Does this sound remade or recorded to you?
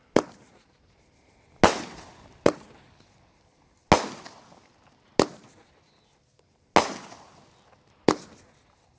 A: recorded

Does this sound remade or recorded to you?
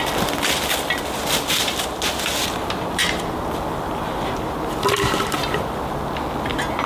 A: recorded